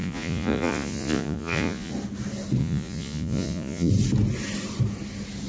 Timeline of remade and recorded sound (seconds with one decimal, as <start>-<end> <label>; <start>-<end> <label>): 0.0-1.9 remade; 1.9-2.6 recorded; 2.6-3.9 remade; 3.9-5.5 recorded